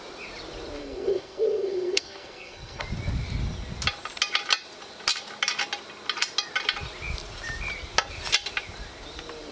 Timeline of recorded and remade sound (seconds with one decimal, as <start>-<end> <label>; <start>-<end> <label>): 0.0-0.8 recorded; 0.8-2.8 remade; 2.8-9.5 recorded